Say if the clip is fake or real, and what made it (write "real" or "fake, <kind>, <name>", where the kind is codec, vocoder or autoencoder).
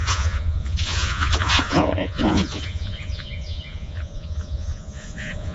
fake, vocoder, Vocos